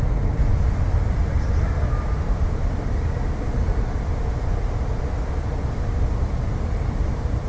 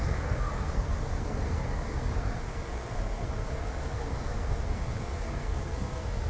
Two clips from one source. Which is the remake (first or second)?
second